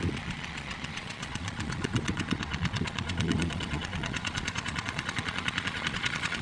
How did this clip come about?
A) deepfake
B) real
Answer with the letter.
A